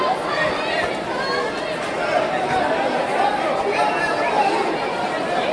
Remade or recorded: recorded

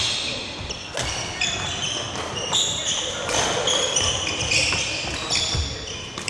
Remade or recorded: recorded